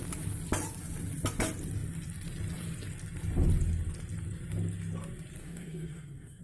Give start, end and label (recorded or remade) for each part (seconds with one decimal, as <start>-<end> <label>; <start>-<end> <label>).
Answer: 0.0-5.4 recorded; 5.4-6.4 remade